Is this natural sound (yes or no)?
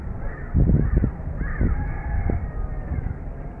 no